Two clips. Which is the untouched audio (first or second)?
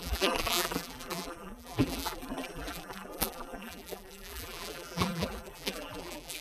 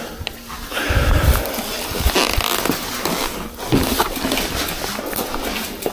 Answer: second